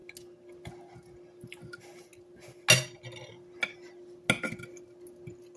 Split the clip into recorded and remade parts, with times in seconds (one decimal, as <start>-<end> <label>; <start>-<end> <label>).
0.0-5.6 recorded